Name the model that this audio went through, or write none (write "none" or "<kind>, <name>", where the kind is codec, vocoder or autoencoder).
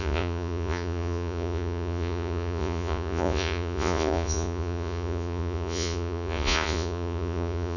vocoder, Vocos